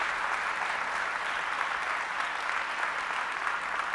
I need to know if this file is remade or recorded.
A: recorded